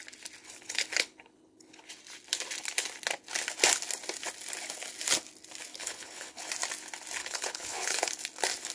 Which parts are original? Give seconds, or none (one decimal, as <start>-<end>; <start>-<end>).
0.0-0.4; 1.9-5.7; 6.5-7.2; 8.1-8.7